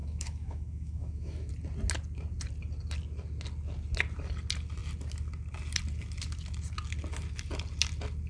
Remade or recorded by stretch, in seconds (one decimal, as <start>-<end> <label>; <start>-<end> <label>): 0.0-1.5 remade; 1.5-8.3 recorded